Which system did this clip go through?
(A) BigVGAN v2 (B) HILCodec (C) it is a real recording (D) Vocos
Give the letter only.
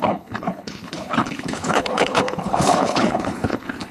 B